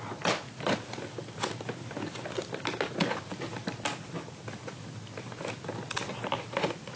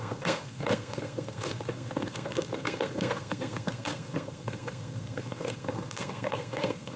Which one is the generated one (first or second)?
second